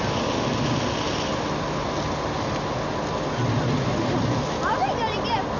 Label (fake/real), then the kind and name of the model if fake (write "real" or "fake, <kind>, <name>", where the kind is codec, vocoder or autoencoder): real